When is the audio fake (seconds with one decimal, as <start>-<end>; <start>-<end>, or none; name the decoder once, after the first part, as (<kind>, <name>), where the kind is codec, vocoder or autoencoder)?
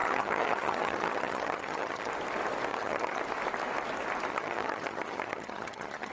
0.0-2.1 (vocoder, HiFi-GAN); 2.7-3.2; 4.3-6.1